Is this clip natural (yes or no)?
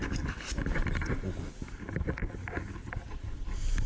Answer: yes